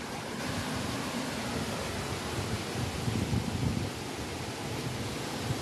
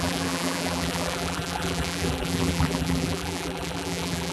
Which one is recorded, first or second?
first